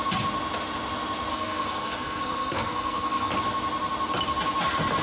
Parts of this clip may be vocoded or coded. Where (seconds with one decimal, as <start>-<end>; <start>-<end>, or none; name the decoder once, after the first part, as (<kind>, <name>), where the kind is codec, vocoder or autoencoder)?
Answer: 1.3-3.3 (codec, SNAC)